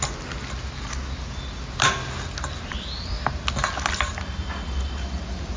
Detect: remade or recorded recorded